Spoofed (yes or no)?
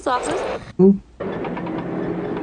no